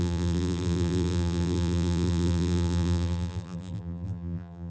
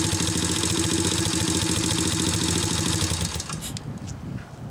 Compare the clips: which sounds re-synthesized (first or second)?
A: first